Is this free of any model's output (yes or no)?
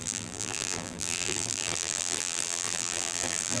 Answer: no